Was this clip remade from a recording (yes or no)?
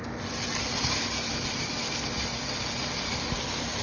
no